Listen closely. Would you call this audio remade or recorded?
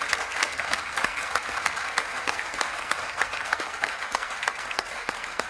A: remade